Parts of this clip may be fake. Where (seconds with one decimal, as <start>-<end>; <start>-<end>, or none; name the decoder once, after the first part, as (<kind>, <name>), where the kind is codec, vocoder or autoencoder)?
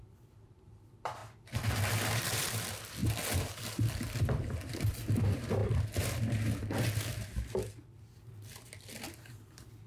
0.0-1.2 (vocoder, BigVGAN v2); 2.2-3.0; 3.7-5.6; 9.3-9.9